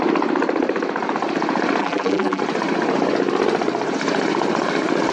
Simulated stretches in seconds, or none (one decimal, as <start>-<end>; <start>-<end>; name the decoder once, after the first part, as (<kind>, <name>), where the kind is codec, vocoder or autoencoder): 1.8-2.4 (vocoder, BigVGAN v2)